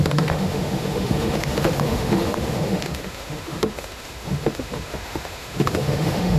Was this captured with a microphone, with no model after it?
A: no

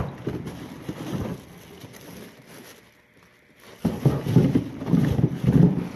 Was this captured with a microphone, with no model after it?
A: yes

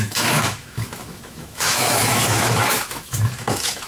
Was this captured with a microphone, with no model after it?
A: no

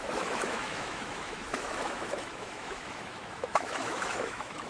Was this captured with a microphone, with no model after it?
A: no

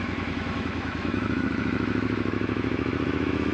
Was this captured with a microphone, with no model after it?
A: no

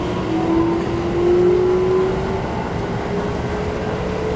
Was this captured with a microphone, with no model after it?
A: yes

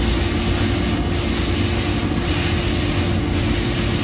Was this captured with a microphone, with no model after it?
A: yes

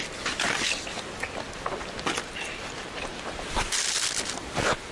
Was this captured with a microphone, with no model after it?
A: yes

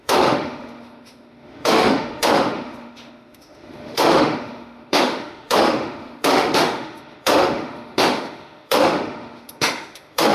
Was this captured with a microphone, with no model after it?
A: no